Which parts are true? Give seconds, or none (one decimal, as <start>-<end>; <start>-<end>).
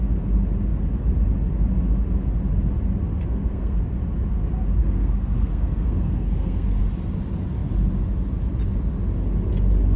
0.0-3.3; 3.8-4.8; 6.8-10.0